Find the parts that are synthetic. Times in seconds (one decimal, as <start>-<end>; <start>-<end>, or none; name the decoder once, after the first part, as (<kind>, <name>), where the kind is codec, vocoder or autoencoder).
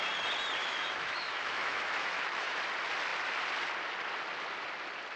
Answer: 0.6-2.6 (autoencoder, DAC-VAE)